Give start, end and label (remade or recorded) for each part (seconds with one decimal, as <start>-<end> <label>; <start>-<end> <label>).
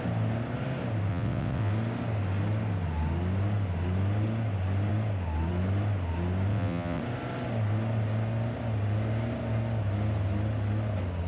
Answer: 0.0-1.1 recorded; 1.1-1.7 remade; 1.7-6.5 recorded; 6.5-7.0 remade; 7.0-11.3 recorded